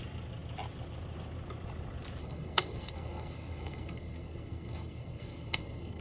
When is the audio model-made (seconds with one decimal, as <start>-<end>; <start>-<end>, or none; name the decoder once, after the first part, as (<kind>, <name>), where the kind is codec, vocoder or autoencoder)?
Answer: 2.2-6.0 (codec, SNAC)